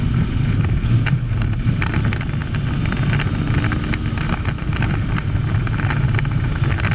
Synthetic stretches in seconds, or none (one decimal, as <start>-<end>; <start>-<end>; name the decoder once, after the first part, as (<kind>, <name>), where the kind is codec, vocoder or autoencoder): none